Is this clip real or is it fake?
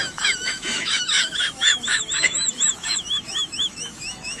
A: fake